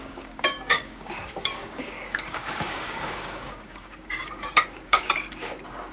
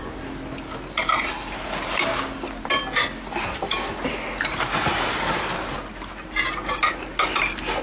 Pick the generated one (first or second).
first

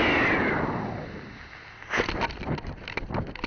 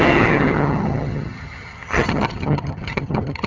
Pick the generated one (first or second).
second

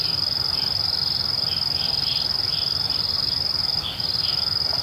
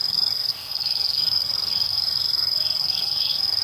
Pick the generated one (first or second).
second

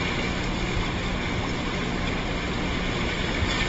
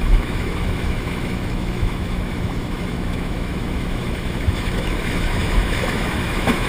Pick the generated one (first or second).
second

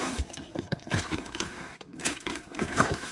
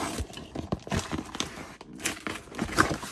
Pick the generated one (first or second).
first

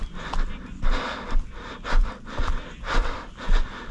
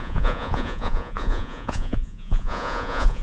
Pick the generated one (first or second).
second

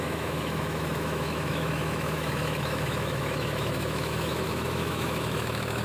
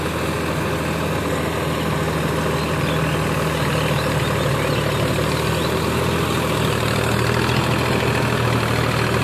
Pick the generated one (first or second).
first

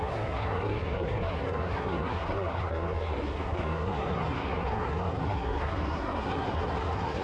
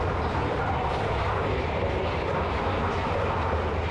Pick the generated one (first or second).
first